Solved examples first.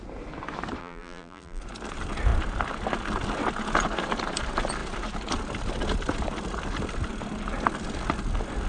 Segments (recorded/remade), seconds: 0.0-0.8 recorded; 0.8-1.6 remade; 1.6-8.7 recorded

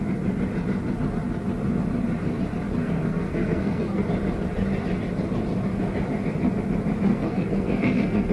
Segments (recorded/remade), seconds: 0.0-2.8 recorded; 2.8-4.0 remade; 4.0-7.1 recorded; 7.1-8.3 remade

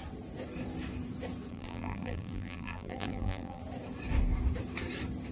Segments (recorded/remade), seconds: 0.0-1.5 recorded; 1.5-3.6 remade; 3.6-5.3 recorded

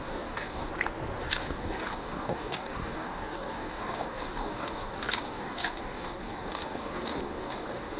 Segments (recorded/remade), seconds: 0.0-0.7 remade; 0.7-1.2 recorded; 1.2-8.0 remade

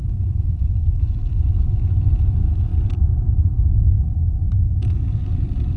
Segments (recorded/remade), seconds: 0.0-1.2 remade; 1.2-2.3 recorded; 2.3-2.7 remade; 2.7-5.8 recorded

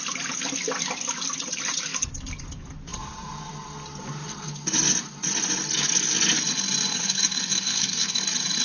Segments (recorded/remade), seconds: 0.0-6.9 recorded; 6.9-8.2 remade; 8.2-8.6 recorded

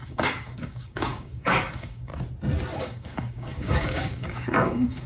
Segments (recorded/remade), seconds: 0.0-2.1 remade; 2.1-2.8 recorded; 2.8-5.1 remade